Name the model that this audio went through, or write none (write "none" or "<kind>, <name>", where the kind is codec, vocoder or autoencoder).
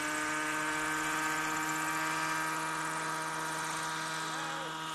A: none